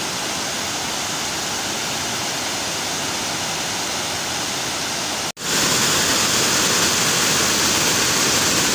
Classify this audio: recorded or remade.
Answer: recorded